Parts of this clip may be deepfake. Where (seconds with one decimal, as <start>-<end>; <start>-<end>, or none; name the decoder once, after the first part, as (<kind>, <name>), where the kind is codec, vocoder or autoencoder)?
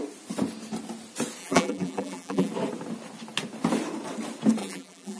1.4-2.5 (vocoder, BigVGAN v2); 4.6-5.2